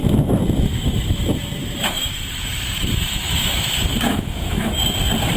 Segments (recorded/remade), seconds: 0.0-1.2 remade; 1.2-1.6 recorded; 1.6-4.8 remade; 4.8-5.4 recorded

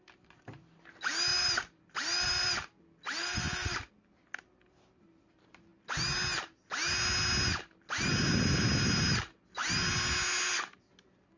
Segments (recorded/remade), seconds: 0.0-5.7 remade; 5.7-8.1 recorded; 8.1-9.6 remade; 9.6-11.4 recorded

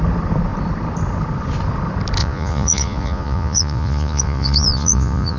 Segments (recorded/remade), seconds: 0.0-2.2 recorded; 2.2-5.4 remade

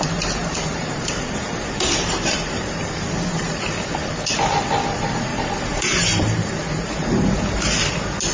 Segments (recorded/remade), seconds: 0.0-0.4 recorded; 0.4-4.1 remade; 4.1-5.3 recorded; 5.3-7.3 remade; 7.3-8.3 recorded